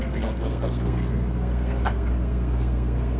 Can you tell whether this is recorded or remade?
remade